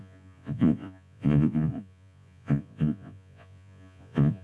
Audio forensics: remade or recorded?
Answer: remade